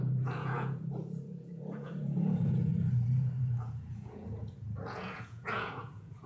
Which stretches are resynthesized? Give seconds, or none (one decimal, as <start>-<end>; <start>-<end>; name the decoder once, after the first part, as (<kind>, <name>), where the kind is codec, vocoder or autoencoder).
0.0-2.7 (vocoder, Vocos); 3.4-6.3